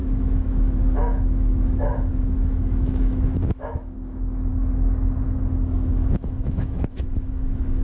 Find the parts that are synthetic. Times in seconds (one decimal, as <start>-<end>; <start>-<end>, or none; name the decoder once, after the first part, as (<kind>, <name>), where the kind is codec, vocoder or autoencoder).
0.0-4.5 (autoencoder, DAC-VAE); 6.1-7.8